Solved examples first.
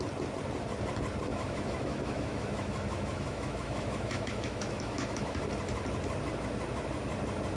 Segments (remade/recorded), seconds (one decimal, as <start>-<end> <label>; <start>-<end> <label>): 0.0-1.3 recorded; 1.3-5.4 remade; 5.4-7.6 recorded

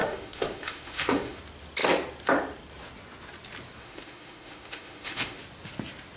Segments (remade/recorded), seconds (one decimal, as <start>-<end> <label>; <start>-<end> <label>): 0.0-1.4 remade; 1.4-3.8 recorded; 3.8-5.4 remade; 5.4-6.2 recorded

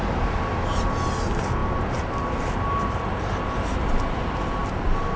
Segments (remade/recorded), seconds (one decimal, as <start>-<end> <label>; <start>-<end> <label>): 0.0-5.2 recorded

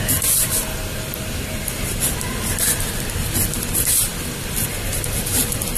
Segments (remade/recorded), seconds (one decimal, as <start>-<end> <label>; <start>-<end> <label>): 0.0-5.8 recorded